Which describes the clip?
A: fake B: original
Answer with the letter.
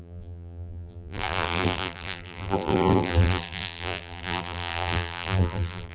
A